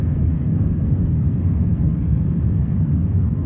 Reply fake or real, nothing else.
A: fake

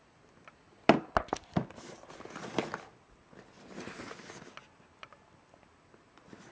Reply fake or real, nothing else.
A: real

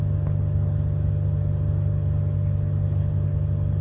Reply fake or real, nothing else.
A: real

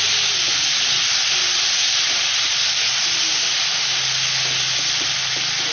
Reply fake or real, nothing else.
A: real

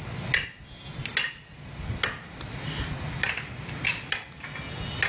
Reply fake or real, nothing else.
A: real